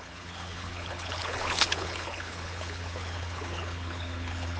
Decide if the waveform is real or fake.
fake